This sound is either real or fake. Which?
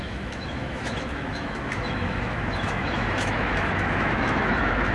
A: fake